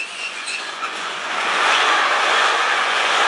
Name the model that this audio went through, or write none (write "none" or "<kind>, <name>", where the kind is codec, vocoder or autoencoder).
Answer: vocoder, Vocos